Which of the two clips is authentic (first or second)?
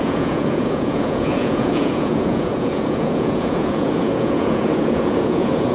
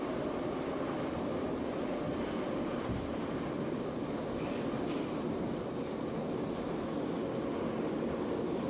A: second